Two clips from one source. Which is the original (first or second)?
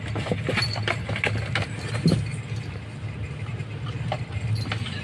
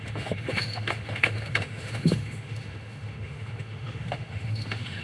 first